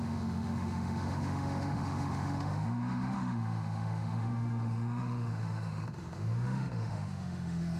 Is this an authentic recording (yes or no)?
no